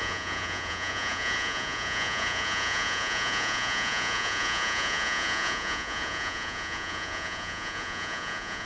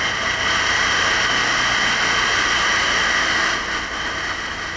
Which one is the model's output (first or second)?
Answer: first